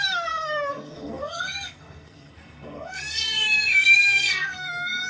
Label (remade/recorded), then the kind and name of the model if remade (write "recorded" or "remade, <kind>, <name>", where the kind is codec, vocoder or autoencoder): remade, codec, SNAC